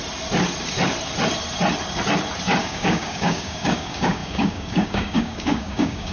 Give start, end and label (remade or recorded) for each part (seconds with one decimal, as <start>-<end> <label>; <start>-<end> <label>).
0.0-2.6 recorded; 2.6-6.1 remade